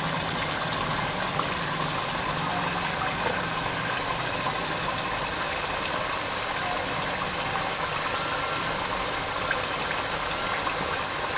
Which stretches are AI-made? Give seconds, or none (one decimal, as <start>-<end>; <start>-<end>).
none